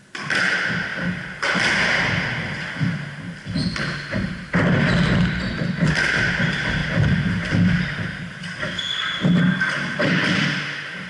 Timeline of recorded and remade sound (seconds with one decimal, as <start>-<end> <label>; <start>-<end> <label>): 0.0-6.8 recorded; 6.8-7.4 remade; 7.4-11.1 recorded